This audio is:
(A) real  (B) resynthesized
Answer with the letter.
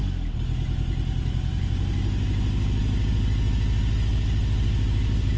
A